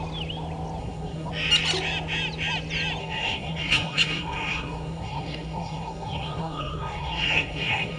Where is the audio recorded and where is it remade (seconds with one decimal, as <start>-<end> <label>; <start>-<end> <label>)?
0.0-0.8 recorded; 0.8-1.3 remade; 1.3-3.0 recorded; 3.0-8.0 remade